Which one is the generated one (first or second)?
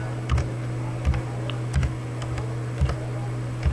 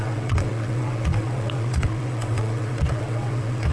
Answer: second